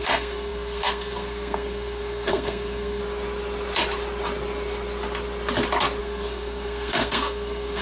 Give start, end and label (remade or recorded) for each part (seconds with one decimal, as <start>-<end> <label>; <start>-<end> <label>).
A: 0.0-3.0 remade; 3.0-6.0 recorded; 6.0-7.8 remade